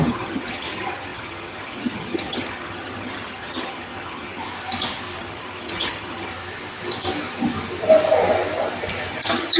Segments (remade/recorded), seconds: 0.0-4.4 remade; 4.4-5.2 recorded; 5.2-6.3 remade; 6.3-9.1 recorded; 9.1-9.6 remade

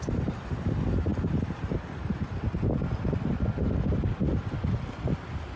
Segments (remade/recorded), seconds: 0.0-5.6 recorded

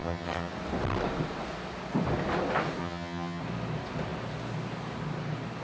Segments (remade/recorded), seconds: 0.0-0.5 remade; 0.5-2.8 recorded; 2.8-3.4 remade; 3.4-5.6 recorded

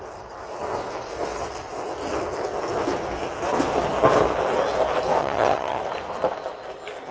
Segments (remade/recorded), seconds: 0.0-5.2 recorded; 5.2-5.8 remade; 5.8-7.1 recorded

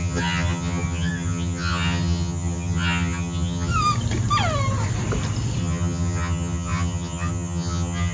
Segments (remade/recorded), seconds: 0.0-3.7 remade; 3.7-5.6 recorded; 5.6-8.1 remade

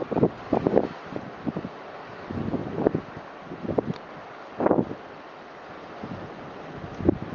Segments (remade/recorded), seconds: 0.0-7.3 recorded

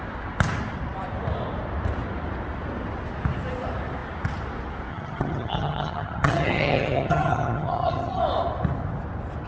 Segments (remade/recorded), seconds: 0.0-4.9 recorded; 4.9-8.2 remade; 8.2-9.5 recorded